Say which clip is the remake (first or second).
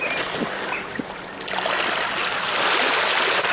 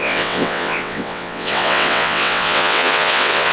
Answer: second